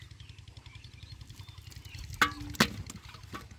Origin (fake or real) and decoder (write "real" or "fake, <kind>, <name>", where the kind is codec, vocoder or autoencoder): real